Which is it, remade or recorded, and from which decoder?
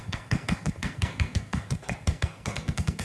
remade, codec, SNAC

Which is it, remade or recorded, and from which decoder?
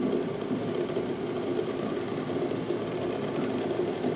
recorded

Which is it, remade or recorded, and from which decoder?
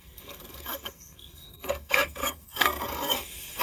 remade, codec, SNAC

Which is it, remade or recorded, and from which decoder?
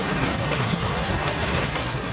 remade, codec, SNAC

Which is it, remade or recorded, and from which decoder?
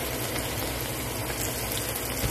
recorded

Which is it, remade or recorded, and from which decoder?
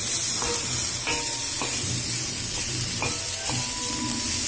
recorded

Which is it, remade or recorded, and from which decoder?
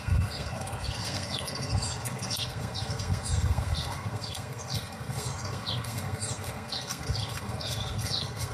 remade, codec, SNAC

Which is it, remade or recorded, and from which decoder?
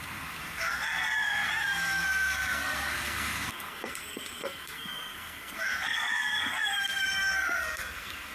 remade, codec, SNAC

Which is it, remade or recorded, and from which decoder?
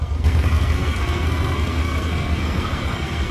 remade, codec, SNAC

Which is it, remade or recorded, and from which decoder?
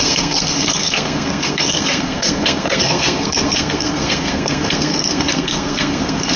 remade, codec, SNAC